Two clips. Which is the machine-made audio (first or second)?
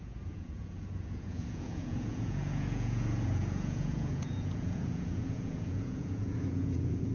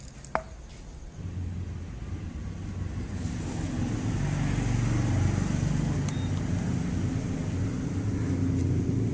first